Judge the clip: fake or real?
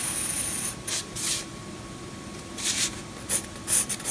real